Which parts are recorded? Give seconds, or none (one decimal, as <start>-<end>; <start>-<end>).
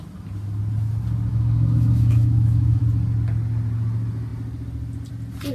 0.0-1.3; 2.8-5.5